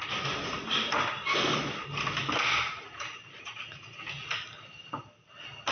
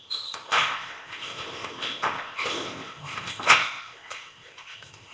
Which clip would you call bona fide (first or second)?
first